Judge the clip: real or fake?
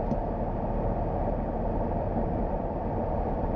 real